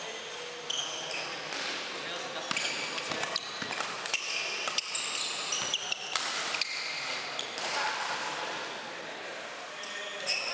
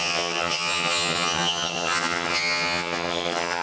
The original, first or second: first